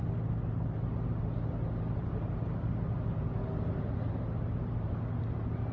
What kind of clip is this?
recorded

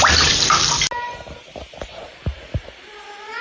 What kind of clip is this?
recorded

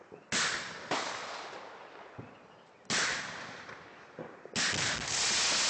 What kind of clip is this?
recorded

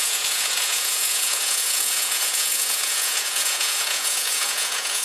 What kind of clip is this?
remade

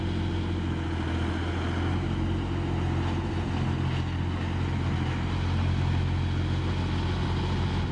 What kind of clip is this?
recorded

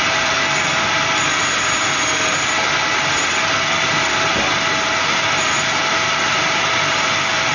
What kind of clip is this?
recorded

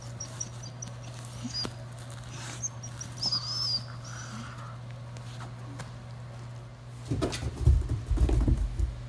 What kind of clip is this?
recorded